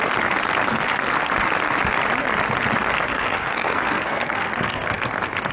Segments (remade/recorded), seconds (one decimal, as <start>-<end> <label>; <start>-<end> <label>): 0.0-3.1 recorded; 3.1-5.0 remade; 5.0-5.5 recorded